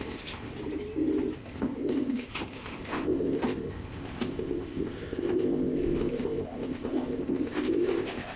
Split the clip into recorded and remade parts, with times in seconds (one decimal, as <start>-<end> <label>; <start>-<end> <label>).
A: 0.0-0.5 remade; 0.5-1.4 recorded; 1.4-8.4 remade